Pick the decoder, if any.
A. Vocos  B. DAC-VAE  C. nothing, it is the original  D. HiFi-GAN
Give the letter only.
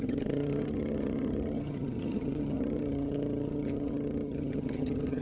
D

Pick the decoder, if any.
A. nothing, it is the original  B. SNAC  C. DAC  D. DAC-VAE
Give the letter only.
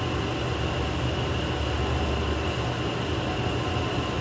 A